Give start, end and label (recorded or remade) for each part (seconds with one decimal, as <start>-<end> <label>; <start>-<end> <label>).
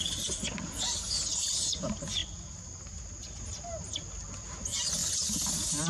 0.0-5.0 recorded; 5.0-5.9 remade